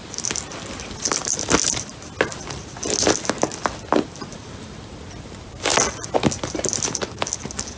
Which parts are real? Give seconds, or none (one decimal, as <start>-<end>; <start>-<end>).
0.0-4.3; 5.2-7.8